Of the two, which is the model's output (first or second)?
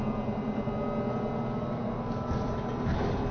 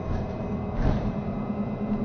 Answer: second